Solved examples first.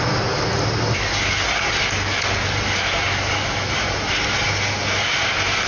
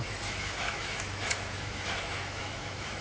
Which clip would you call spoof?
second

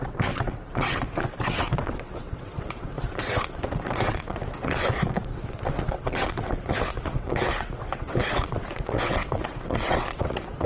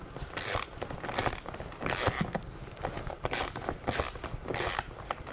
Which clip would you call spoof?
first